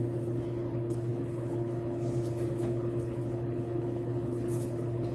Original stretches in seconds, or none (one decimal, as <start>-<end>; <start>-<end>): none